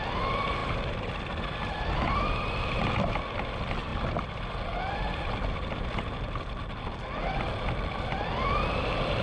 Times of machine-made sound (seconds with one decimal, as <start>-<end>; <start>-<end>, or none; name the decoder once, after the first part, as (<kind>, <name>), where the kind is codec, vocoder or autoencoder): 0.6-1.1 (vocoder, BigVGAN v2)